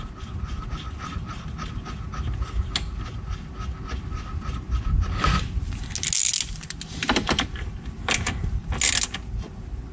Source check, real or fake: real